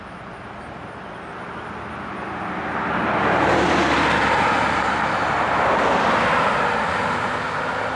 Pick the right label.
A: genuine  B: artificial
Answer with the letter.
A